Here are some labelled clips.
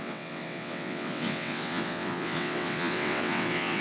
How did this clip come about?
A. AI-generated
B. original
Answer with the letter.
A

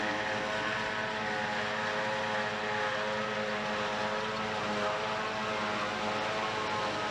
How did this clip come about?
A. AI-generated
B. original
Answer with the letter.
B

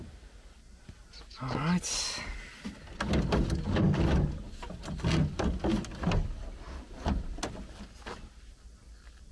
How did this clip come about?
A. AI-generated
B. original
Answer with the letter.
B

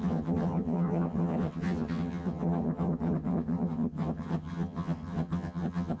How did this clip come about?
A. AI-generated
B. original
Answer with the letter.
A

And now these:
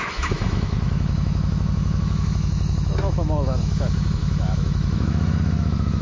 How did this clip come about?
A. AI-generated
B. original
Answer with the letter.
A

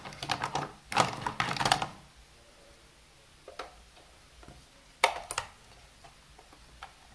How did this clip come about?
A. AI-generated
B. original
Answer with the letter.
B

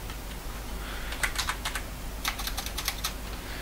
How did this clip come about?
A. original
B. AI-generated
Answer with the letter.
A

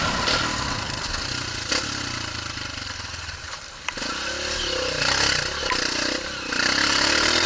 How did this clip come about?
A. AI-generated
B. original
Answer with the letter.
B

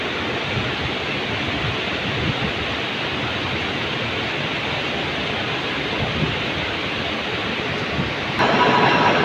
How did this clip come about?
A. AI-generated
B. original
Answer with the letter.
B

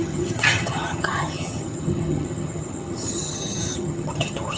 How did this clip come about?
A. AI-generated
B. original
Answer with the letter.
A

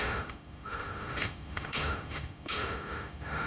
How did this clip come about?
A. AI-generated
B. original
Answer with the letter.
A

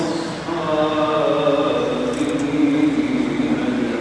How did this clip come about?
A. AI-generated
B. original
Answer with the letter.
B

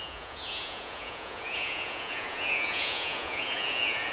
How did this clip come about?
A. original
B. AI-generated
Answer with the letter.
B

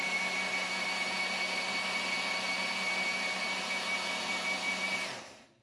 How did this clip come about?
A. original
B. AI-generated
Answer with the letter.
A